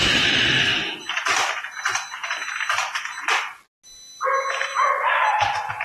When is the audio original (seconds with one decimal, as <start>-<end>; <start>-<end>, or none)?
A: 0.0-5.8